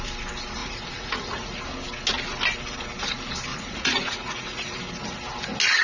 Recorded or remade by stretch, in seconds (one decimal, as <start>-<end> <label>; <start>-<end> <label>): 0.0-0.6 recorded; 0.6-1.6 remade; 1.6-3.5 recorded; 3.5-4.8 remade; 4.8-5.8 recorded

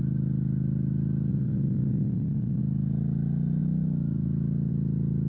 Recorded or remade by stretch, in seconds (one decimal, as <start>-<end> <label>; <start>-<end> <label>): 0.0-1.3 recorded; 1.3-2.6 remade; 2.6-5.3 recorded

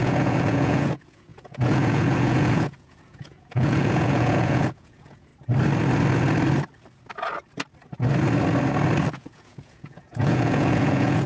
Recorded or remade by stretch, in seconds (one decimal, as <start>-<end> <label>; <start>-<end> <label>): 0.0-5.3 remade; 5.3-9.1 recorded; 9.1-11.3 remade